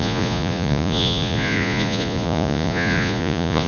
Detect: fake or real fake